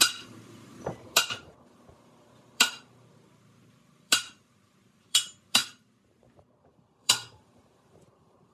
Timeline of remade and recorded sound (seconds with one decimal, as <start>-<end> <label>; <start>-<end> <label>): 0.0-5.6 remade; 5.6-7.0 recorded; 7.0-8.5 remade